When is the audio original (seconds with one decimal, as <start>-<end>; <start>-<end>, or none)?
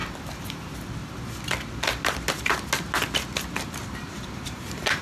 0.0-0.5; 1.0-4.0